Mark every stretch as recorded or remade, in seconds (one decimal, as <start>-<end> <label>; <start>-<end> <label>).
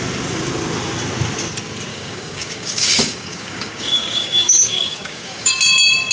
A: 0.0-1.9 recorded; 1.9-5.6 remade; 5.6-6.1 recorded